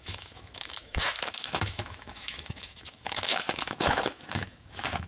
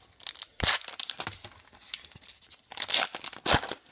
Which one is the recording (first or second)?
second